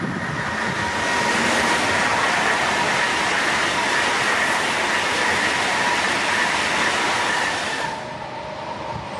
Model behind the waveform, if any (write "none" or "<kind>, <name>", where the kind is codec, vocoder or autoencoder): none